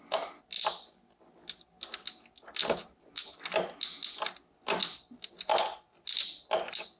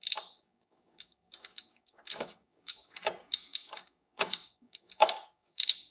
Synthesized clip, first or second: second